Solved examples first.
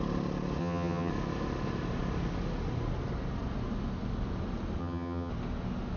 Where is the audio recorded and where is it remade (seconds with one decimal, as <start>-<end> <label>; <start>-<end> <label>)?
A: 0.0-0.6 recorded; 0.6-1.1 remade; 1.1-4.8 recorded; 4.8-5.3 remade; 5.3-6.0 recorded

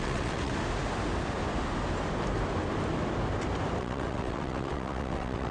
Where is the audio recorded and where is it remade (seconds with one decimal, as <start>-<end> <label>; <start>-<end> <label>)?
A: 0.0-0.5 remade; 0.5-3.8 recorded; 3.8-5.5 remade

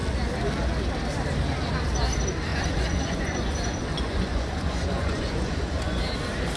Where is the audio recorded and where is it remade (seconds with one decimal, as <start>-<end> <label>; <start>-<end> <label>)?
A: 0.0-2.5 recorded; 2.5-6.0 remade; 6.0-6.6 recorded